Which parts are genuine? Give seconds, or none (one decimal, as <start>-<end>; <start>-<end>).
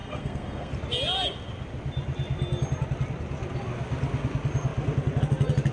0.7-5.7